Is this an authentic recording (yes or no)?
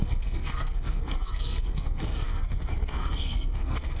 no